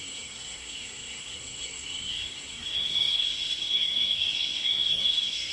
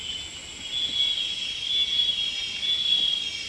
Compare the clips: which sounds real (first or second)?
second